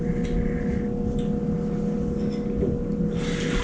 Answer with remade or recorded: recorded